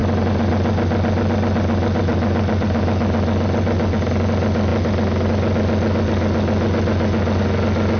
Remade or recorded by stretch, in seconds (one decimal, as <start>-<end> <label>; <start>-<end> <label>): 0.0-0.5 remade; 0.5-2.1 recorded; 2.1-2.8 remade; 2.8-8.0 recorded